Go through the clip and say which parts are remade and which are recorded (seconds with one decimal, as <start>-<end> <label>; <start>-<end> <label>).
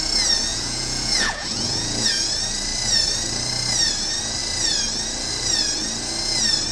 0.0-0.5 recorded; 0.5-2.3 remade; 2.3-6.7 recorded